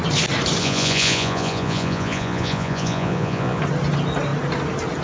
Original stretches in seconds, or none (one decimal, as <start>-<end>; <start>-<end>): 0.0-0.6; 3.6-5.0